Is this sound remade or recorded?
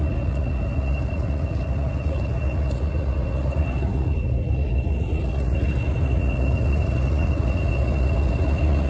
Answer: remade